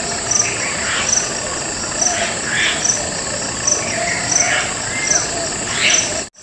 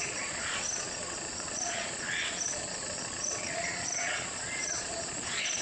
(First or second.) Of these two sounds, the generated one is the second